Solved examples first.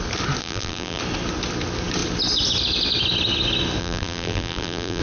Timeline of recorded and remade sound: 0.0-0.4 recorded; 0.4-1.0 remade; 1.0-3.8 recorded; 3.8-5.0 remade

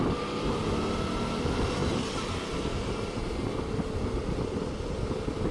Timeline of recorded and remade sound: 0.0-5.5 recorded

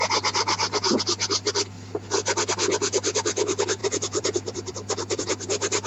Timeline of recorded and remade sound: 0.0-3.8 recorded; 3.8-5.3 remade; 5.3-5.9 recorded

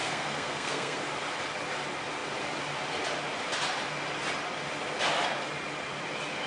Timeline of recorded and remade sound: 0.0-1.0 remade; 1.0-6.5 recorded

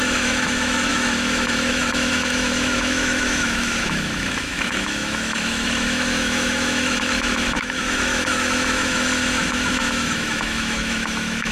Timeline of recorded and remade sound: 0.0-11.5 remade